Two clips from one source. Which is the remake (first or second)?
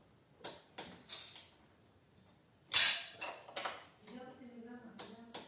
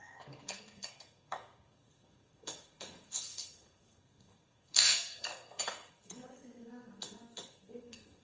second